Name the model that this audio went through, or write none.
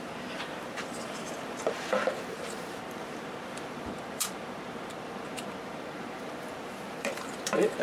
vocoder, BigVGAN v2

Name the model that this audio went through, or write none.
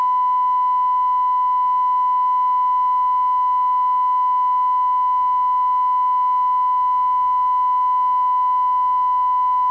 none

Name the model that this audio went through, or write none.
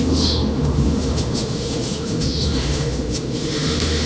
autoencoder, DAC-VAE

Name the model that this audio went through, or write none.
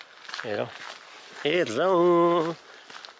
none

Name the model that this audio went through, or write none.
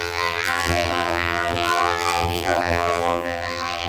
vocoder, BigVGAN v2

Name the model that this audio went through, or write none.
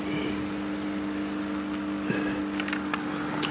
none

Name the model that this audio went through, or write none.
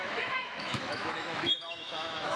autoencoder, DAC-VAE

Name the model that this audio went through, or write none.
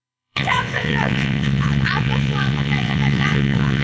vocoder, WaveNeXt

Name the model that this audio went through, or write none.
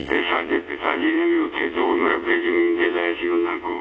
vocoder, WaveNeXt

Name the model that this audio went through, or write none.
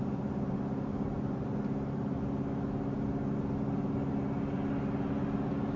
none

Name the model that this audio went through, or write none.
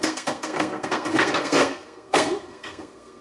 codec, SNAC